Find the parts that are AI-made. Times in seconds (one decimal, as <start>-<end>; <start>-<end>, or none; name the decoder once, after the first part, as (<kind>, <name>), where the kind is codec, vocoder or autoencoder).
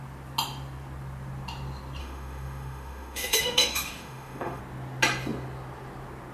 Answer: 2.0-4.6 (autoencoder, DAC-VAE)